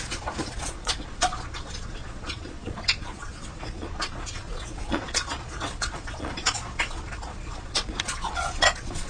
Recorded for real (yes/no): no